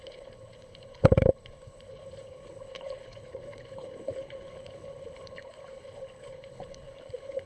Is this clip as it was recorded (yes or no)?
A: no